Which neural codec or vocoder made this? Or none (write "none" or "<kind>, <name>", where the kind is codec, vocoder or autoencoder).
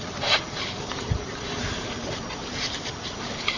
none